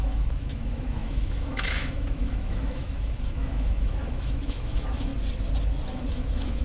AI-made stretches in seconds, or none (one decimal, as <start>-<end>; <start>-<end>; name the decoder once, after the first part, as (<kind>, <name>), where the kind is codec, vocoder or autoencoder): 0.0-5.1 (autoencoder, DAC-VAE); 6.1-6.6